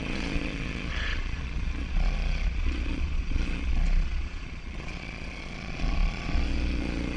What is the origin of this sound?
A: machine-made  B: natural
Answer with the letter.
A